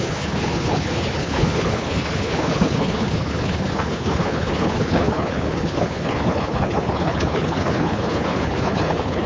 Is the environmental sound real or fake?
fake